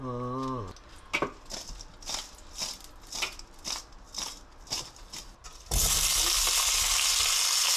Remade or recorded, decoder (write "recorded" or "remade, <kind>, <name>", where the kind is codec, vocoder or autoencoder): recorded